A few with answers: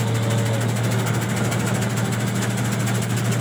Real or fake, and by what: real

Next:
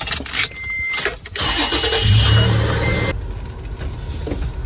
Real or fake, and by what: real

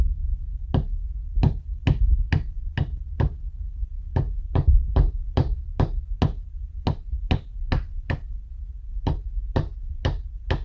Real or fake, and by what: real